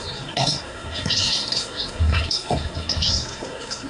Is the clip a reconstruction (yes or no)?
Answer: yes